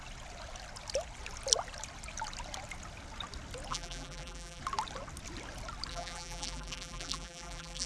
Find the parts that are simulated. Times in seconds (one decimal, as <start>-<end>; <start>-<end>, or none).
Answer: 3.7-4.6; 5.9-7.9